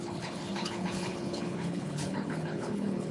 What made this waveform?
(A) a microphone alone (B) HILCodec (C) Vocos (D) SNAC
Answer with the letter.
B